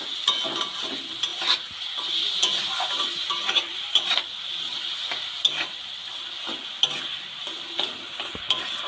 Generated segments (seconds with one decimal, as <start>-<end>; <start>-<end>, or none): none